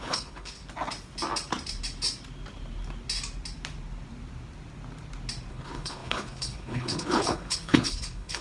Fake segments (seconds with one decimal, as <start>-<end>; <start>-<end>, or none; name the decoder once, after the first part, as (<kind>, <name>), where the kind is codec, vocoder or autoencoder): 0.0-0.6 (codec, HILCodec); 5.5-8.4